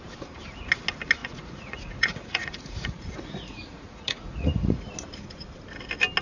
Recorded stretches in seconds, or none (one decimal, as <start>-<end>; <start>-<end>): 0.0-1.2; 4.9-6.2